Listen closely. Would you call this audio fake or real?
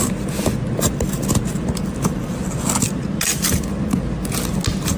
real